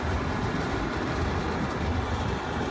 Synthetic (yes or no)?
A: no